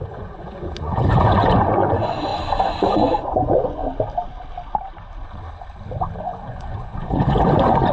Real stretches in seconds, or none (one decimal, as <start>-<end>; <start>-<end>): 3.8-6.2